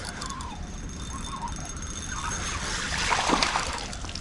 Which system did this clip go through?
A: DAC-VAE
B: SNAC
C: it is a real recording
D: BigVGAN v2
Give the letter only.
D